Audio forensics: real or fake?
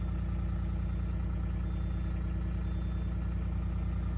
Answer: real